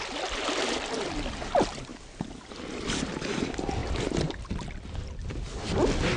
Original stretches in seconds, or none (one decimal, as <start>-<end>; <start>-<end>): 1.9-2.5; 3.8-4.5

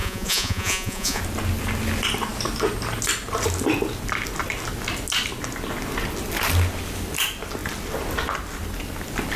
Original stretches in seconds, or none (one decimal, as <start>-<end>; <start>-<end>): 1.2-9.4

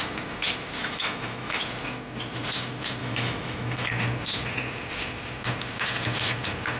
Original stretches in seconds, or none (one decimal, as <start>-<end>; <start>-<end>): 0.0-0.8; 1.6-3.0; 3.9-6.8

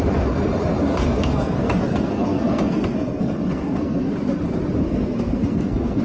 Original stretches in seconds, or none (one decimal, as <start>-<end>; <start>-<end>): 0.0-0.9; 4.1-4.8

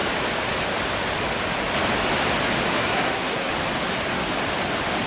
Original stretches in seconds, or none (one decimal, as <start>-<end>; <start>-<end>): 0.0-2.7; 3.5-5.1